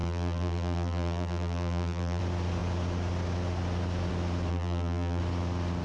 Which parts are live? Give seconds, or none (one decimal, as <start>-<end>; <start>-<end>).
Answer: 2.2-4.5; 5.2-5.8